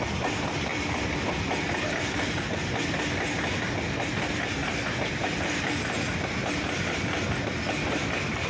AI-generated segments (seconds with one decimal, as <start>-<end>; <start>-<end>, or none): 0.7-4.1; 4.6-5.4